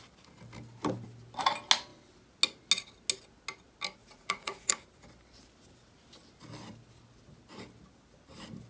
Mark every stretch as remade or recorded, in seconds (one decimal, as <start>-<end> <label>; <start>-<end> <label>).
0.0-4.0 recorded; 4.0-4.7 remade; 4.7-8.7 recorded